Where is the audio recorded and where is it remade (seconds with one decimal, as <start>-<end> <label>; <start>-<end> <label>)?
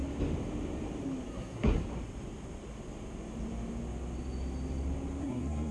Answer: 0.0-1.3 recorded; 1.3-1.8 remade; 1.8-5.2 recorded; 5.2-5.7 remade